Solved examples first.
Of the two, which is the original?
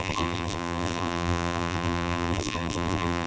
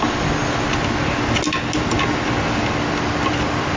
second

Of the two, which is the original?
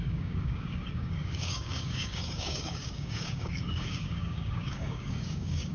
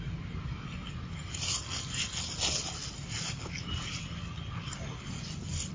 second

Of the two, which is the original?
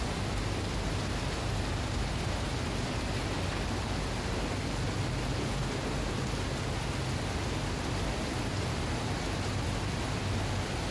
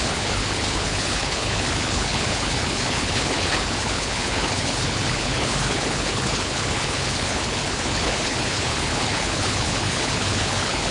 first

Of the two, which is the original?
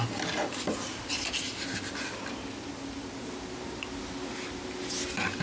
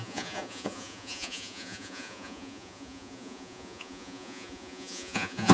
first